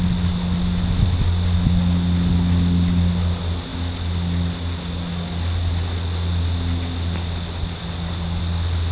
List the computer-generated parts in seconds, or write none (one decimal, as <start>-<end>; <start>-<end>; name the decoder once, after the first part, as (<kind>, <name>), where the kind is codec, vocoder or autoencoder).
none